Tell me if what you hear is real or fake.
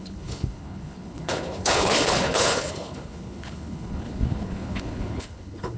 fake